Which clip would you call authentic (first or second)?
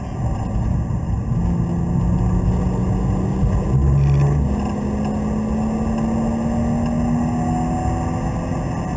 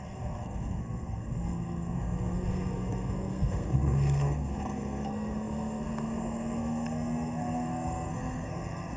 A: first